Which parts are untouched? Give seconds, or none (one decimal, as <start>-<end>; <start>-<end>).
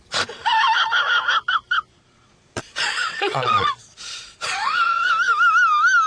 0.0-1.9; 5.1-6.1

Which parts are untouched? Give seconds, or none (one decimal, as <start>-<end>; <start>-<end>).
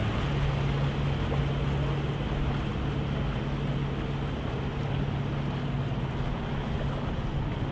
0.0-7.7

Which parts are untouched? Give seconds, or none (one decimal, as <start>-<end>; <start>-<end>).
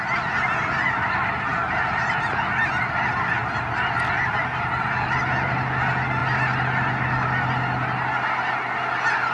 0.0-9.3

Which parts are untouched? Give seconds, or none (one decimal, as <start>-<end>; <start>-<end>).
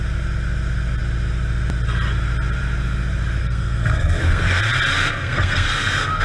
0.0-3.4; 4.6-5.0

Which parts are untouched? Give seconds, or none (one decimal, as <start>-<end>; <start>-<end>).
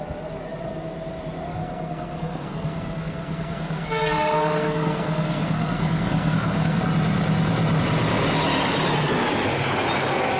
0.0-1.6; 6.8-10.4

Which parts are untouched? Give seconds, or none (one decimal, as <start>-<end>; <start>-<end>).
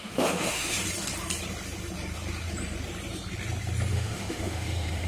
0.8-3.9